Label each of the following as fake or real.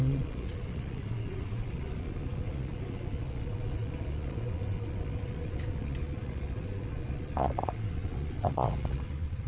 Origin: fake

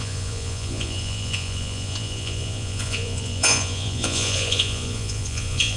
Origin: fake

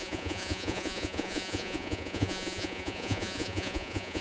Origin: fake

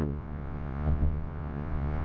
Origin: fake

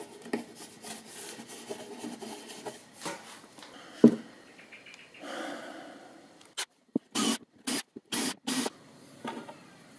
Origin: real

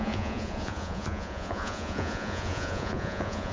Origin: fake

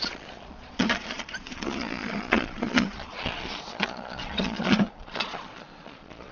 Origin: fake